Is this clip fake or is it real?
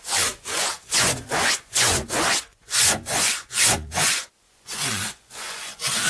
fake